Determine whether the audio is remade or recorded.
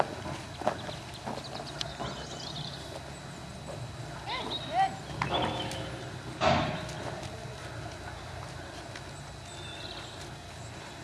recorded